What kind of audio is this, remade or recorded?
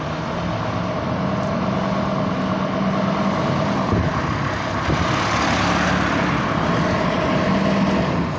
recorded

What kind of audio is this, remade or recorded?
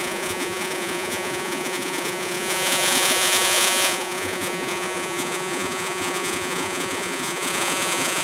remade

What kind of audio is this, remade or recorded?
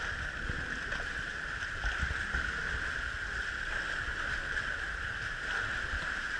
recorded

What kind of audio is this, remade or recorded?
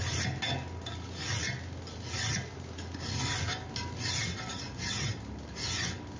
recorded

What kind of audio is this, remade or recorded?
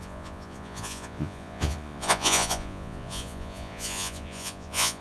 remade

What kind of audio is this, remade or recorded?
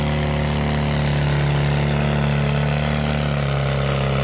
recorded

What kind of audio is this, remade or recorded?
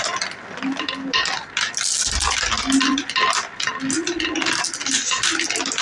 recorded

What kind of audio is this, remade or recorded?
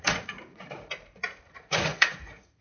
remade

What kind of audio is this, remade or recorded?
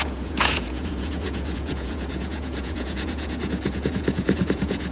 remade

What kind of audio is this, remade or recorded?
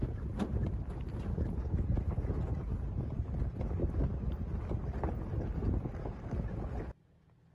recorded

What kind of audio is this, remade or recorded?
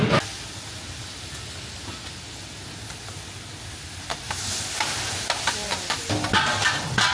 recorded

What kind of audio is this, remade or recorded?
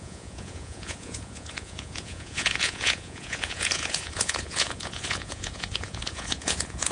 remade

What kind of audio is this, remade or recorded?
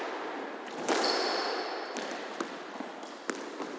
recorded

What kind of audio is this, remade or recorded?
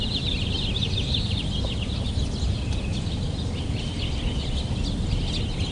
recorded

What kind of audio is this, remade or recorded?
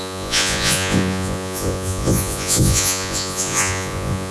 remade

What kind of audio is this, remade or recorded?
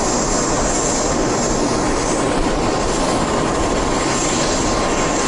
recorded